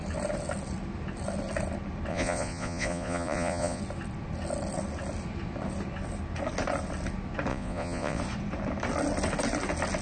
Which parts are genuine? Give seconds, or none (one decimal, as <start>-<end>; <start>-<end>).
0.0-2.1; 3.8-7.5; 8.2-10.0